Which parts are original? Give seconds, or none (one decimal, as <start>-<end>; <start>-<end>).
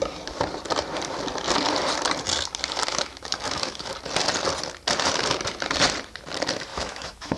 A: 0.0-2.9; 3.9-6.7